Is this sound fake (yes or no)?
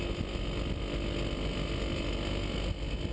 no